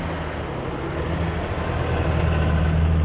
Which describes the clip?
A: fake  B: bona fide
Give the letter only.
B